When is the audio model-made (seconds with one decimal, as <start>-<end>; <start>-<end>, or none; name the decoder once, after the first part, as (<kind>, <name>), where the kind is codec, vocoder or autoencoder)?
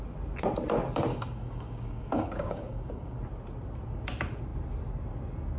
1.1-3.2 (codec, DAC)